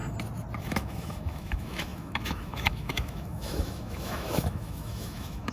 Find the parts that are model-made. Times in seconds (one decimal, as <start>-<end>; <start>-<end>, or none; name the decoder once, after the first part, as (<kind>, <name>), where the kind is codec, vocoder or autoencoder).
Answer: 0.6-5.5 (autoencoder, DAC-VAE)